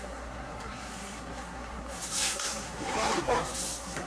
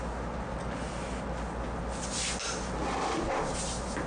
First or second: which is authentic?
second